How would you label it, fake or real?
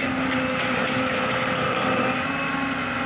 real